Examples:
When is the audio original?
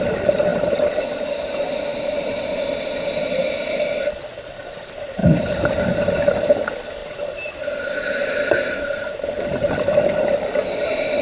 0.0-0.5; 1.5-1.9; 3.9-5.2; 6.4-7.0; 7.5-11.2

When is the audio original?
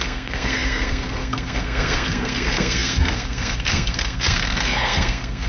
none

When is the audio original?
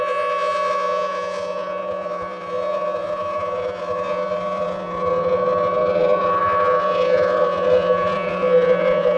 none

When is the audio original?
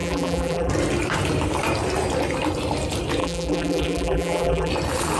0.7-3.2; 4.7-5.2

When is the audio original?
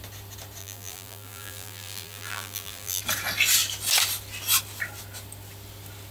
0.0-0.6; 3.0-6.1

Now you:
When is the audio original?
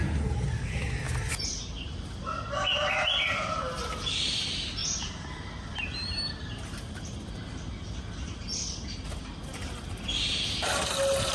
0.0-4.8; 7.0-11.3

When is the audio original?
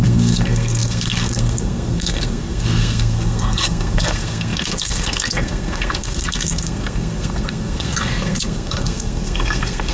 none